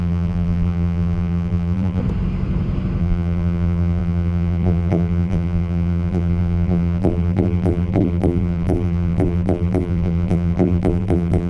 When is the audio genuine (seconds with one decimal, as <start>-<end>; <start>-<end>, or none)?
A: 2.0-3.0